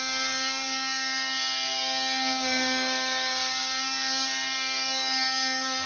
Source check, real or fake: fake